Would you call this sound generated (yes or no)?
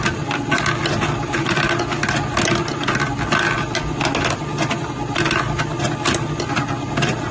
no